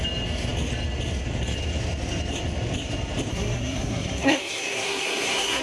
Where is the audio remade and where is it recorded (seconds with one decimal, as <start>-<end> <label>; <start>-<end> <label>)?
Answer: 0.0-3.3 recorded; 3.3-5.6 remade